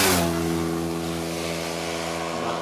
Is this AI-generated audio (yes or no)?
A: no